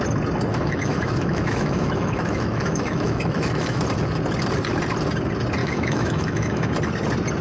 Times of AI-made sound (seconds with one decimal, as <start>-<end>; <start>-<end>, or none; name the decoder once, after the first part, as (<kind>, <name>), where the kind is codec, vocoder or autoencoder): 0.5-3.8 (autoencoder, DAC-VAE); 5.6-6.7